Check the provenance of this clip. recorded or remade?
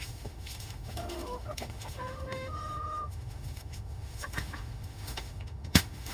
remade